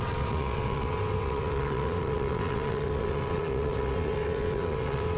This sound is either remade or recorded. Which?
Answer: remade